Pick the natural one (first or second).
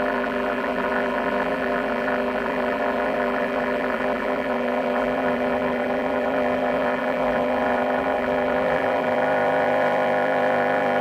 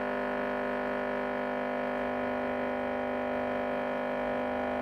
second